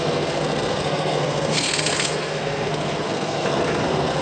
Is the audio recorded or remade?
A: remade